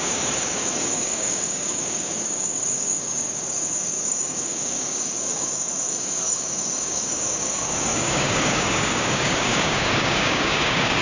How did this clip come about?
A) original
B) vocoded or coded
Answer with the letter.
B